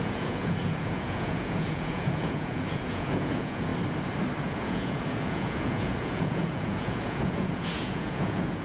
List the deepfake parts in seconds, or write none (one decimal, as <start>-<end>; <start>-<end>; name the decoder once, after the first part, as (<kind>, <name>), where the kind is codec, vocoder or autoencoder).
0.0-3.7 (vocoder, Vocos); 4.4-8.6